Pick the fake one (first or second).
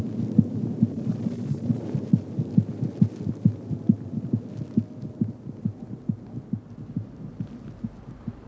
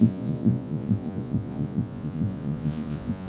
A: second